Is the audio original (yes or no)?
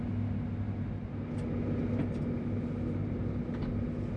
yes